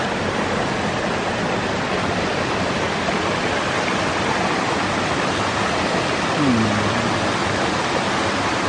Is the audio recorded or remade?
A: recorded